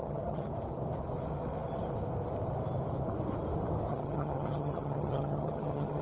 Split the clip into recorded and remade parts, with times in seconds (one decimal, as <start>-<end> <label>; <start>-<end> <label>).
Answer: 0.0-0.5 remade; 0.5-3.9 recorded; 3.9-6.0 remade